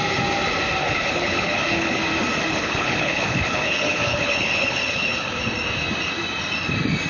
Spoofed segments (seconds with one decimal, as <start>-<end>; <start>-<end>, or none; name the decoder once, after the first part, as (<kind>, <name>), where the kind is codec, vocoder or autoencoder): 0.8-2.0 (codec, HILCodec); 2.5-5.5